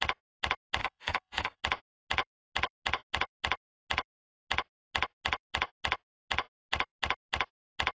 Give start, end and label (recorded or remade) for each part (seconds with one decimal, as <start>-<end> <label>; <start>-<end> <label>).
0.0-0.8 recorded; 0.8-1.6 remade; 1.6-8.0 recorded